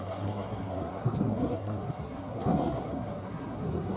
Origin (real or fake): fake